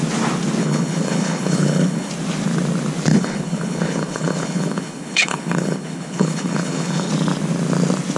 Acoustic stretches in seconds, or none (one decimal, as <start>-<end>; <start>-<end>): 0.0-0.6; 2.1-3.1; 7.1-8.2